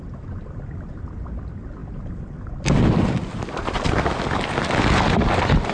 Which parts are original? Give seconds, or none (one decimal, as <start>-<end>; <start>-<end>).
0.0-5.7